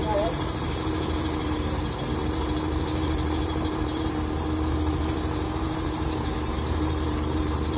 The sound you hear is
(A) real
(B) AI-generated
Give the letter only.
B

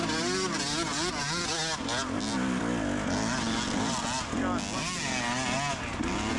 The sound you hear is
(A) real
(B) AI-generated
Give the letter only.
A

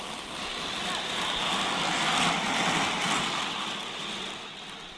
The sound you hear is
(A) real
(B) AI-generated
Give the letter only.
A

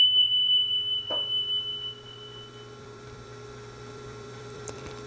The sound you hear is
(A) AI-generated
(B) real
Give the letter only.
A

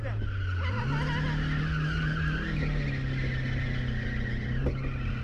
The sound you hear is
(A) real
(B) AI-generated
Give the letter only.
A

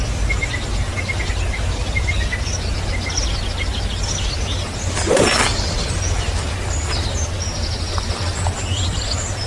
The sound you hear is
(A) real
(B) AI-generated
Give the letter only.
A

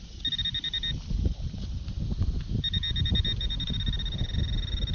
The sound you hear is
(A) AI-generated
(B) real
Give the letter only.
B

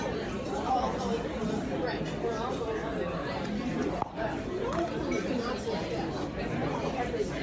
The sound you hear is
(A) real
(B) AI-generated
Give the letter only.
B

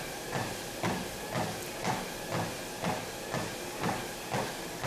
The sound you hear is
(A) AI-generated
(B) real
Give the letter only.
B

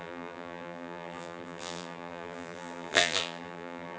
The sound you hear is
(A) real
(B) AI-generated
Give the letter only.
B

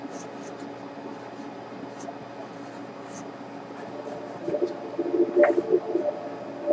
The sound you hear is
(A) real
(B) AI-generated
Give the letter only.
A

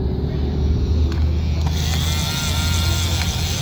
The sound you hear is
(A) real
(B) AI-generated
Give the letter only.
A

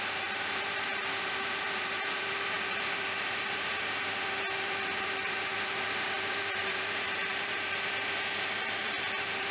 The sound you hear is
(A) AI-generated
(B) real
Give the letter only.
A